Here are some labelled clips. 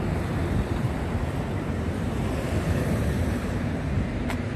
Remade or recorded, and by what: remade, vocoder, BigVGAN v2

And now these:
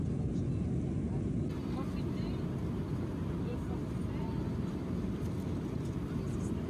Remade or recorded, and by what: recorded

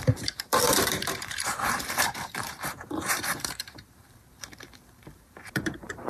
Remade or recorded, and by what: remade, vocoder, BigVGAN v2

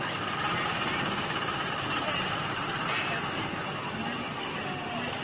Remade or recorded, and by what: recorded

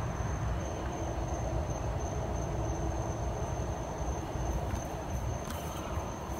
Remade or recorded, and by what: remade, vocoder, BigVGAN v2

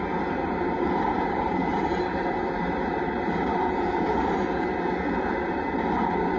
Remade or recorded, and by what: remade, vocoder, BigVGAN v2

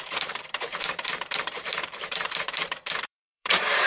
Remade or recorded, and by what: remade, vocoder, BigVGAN v2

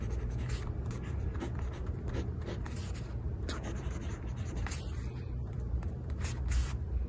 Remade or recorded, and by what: remade, vocoder, BigVGAN v2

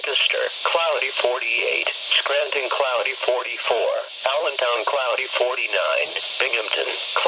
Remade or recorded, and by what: remade, vocoder, BigVGAN v2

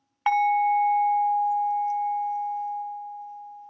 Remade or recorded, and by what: recorded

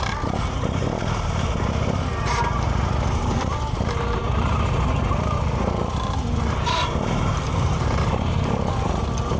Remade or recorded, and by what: remade, vocoder, BigVGAN v2